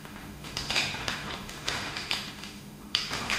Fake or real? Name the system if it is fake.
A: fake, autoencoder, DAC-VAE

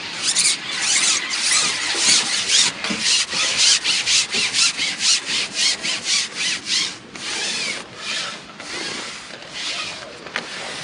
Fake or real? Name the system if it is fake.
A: real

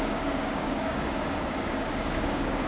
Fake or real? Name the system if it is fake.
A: fake, codec, DAC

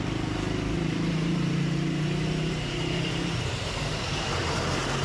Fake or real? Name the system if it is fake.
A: fake, vocoder, BigVGAN v2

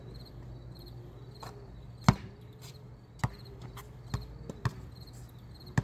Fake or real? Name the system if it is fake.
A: real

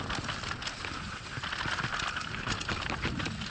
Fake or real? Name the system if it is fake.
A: real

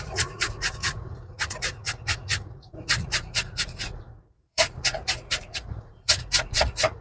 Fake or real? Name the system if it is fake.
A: fake, vocoder, Vocos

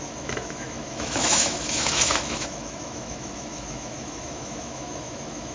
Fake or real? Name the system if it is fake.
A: fake, autoencoder, DAC-VAE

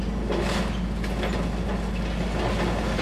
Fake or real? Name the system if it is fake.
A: real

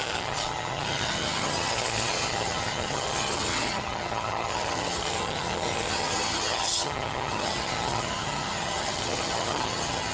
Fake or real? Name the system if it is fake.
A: fake, vocoder, HiFi-GAN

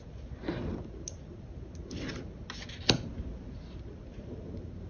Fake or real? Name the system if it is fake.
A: real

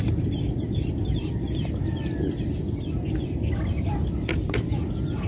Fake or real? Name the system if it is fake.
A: real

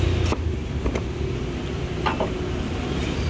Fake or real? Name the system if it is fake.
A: real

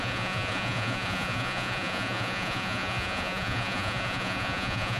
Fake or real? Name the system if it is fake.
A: fake, vocoder, Vocos